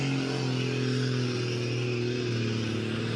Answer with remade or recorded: recorded